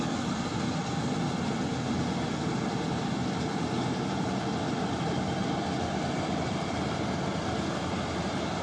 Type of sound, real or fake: real